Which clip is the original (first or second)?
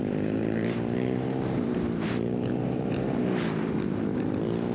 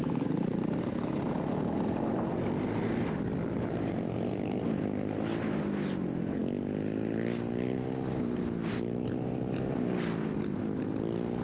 second